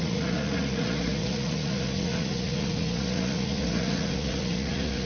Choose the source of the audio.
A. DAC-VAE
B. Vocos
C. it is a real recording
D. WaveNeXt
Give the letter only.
B